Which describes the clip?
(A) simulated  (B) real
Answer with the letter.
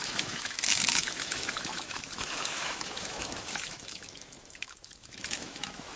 A